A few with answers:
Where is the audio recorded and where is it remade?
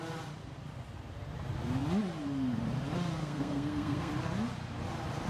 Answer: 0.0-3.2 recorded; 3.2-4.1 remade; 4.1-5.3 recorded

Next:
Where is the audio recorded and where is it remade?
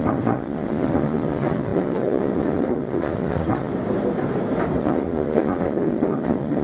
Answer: 0.0-3.7 remade; 3.7-4.8 recorded; 4.8-6.6 remade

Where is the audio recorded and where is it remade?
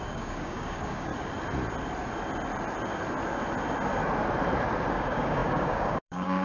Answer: 0.0-1.1 remade; 1.1-4.9 recorded; 4.9-6.4 remade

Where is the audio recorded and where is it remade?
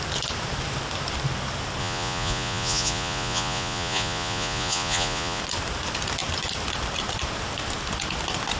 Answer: 0.0-1.8 recorded; 1.8-5.4 remade; 5.4-8.6 recorded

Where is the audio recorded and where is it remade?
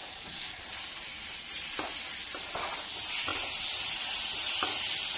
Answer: 0.0-0.6 remade; 0.6-5.2 recorded